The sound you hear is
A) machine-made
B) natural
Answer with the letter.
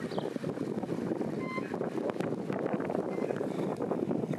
B